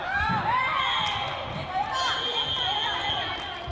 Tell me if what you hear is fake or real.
real